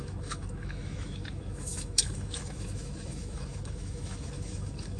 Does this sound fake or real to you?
fake